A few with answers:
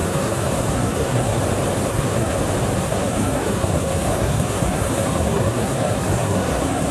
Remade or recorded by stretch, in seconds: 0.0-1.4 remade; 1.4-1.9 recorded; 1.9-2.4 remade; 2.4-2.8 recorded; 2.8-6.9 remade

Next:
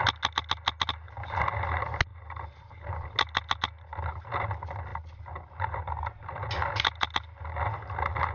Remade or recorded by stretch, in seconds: 0.0-8.3 recorded

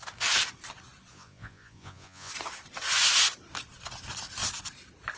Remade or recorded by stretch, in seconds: 0.0-1.1 recorded; 1.1-2.3 remade; 2.3-5.2 recorded

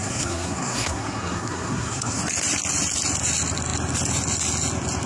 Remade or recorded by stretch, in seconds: 0.0-2.2 remade; 2.2-5.1 recorded